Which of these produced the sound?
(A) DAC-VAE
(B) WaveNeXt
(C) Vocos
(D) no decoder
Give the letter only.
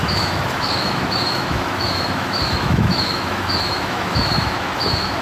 A